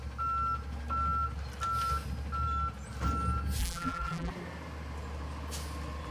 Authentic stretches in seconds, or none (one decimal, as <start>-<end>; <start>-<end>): 0.0-3.6; 4.3-6.1